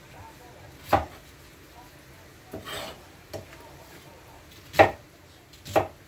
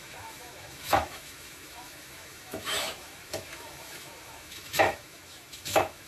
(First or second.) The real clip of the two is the first